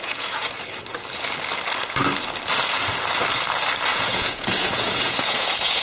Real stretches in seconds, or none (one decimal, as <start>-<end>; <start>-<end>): 0.5-3.9